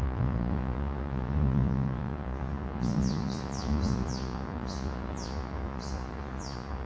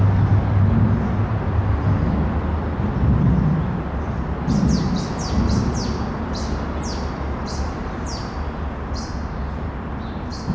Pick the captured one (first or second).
second